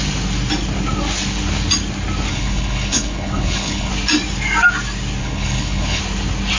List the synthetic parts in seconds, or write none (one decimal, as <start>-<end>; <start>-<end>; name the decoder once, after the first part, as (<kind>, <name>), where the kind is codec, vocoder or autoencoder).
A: 2.3-3.9 (codec, HILCodec); 5.2-6.0